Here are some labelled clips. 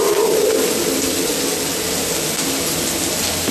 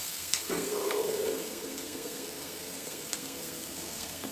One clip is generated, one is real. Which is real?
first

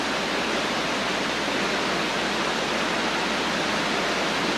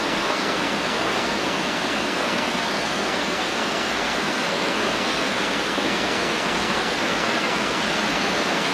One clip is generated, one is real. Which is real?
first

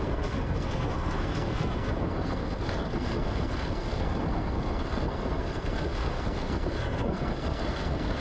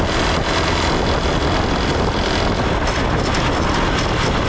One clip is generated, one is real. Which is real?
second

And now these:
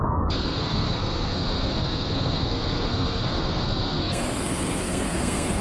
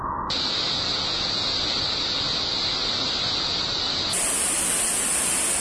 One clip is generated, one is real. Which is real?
second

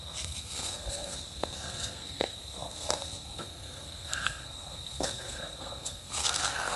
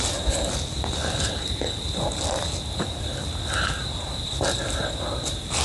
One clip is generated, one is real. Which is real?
second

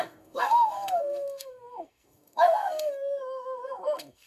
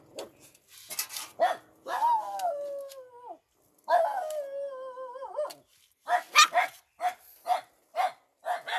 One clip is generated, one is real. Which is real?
second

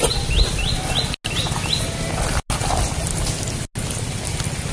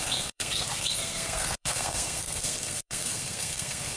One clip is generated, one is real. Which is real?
first